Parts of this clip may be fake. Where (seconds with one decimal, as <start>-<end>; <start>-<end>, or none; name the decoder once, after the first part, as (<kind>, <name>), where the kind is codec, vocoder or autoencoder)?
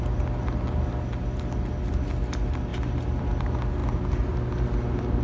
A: none